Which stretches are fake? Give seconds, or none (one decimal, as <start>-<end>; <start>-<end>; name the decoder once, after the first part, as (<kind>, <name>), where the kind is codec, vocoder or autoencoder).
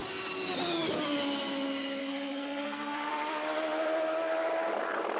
2.0-3.1 (codec, SNAC)